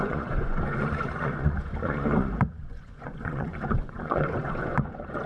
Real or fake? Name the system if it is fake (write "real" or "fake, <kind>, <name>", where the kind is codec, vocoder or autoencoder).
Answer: fake, vocoder, Vocos